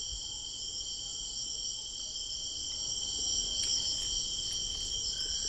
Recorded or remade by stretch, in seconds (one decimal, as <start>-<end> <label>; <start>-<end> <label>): 0.0-5.5 recorded